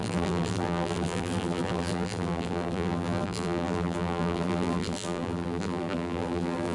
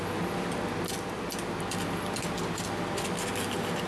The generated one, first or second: first